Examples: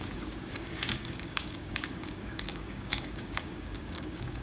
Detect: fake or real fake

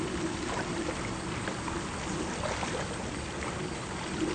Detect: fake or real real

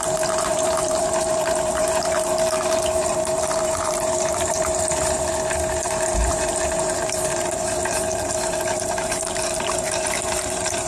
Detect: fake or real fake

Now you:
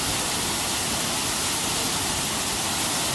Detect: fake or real real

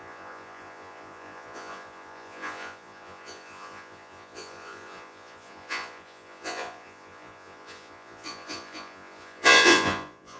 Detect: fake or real fake